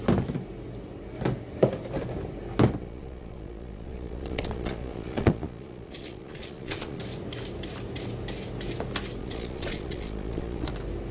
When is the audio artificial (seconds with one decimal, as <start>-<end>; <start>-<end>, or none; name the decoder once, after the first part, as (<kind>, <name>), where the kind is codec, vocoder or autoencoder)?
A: 2.8-7.0 (vocoder, Vocos); 9.2-10.7